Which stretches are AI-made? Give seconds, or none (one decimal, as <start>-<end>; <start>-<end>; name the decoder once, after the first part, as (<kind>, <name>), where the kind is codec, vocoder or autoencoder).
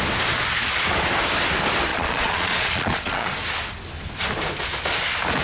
1.9-3.3 (vocoder, Vocos)